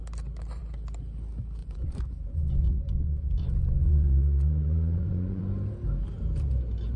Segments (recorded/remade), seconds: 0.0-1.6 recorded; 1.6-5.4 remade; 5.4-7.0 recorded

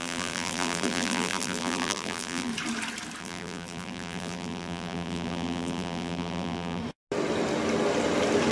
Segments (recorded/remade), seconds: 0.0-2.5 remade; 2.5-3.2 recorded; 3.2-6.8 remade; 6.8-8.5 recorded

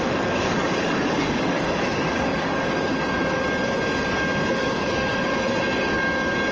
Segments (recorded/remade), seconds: 0.0-2.9 remade; 2.9-4.5 recorded; 4.5-5.1 remade; 5.1-6.5 recorded

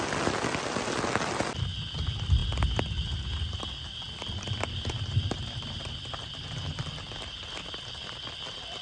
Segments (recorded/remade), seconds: 0.0-8.8 recorded

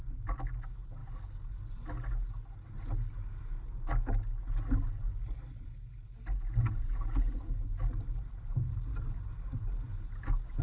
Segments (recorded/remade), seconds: 0.0-10.6 recorded

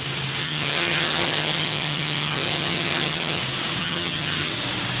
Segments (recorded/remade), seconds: 0.0-0.4 recorded; 0.4-3.4 remade; 3.4-3.8 recorded; 3.8-4.5 remade; 4.5-5.0 recorded

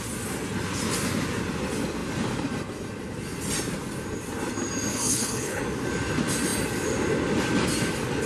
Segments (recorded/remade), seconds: 0.0-4.9 recorded; 4.9-5.6 remade; 5.6-8.3 recorded

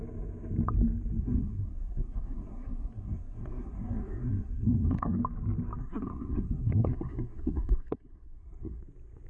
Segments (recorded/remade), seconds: 0.0-1.2 recorded; 1.2-5.2 remade; 5.2-5.8 recorded; 5.8-8.8 remade; 8.8-9.3 recorded